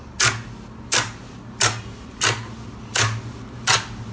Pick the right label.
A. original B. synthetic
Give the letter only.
A